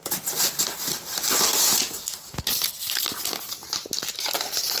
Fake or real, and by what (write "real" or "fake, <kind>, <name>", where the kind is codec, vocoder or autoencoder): real